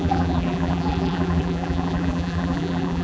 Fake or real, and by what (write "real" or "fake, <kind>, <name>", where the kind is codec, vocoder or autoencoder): fake, vocoder, BigVGAN v2